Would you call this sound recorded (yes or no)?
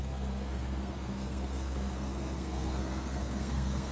no